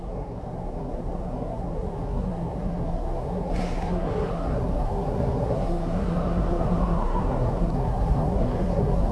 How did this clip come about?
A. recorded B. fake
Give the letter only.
B